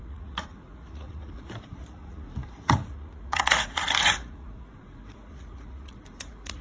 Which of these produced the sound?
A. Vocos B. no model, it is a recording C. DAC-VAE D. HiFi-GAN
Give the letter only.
A